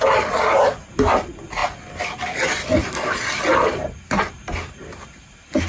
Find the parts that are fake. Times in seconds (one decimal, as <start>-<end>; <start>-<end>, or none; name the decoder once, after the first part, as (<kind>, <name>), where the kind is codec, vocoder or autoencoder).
none